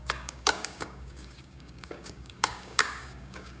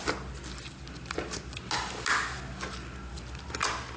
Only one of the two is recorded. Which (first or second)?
second